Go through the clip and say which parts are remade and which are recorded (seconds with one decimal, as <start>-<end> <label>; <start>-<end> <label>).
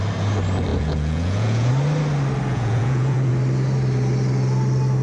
0.0-0.7 recorded; 0.7-1.7 remade; 1.7-2.5 recorded; 2.5-3.3 remade; 3.3-5.0 recorded